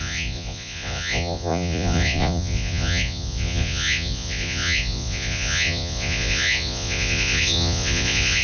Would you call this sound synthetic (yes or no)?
yes